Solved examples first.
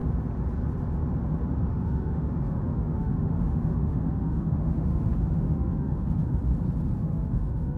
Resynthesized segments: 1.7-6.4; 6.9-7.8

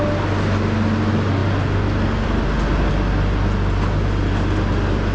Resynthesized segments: none

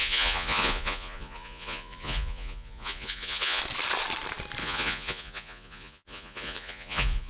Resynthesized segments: 0.0-3.6; 4.6-7.3

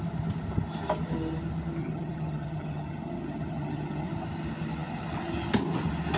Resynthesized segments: 1.8-4.1

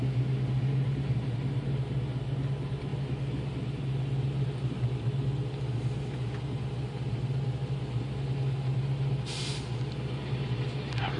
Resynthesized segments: none

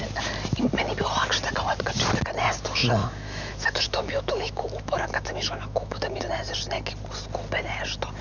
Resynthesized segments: 3.0-6.2